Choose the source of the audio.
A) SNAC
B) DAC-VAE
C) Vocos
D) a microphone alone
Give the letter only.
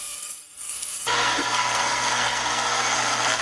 A